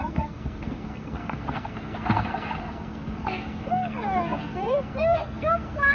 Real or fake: fake